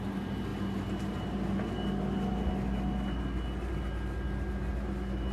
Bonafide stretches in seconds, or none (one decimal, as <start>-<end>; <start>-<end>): 0.0-5.3